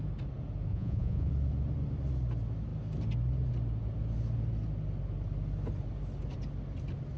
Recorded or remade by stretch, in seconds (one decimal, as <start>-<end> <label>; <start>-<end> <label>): 0.0-0.7 recorded; 0.7-1.3 remade; 1.3-7.2 recorded